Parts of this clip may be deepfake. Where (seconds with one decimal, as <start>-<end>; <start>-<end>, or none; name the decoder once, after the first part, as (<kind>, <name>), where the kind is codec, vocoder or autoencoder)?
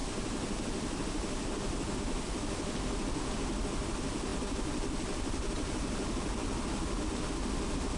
none